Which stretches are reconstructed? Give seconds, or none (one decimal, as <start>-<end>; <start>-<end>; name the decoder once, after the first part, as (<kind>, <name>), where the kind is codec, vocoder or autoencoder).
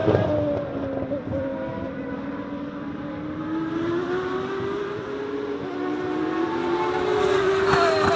none